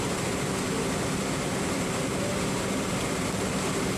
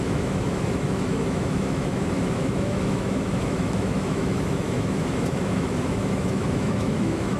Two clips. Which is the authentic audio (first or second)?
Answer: first